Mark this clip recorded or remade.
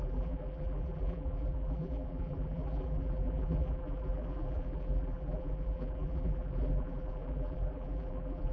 remade